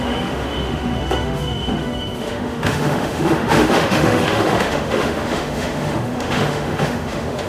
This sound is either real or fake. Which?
fake